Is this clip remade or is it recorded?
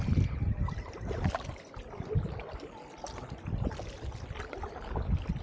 recorded